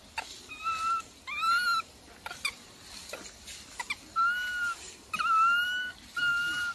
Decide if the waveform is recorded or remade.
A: recorded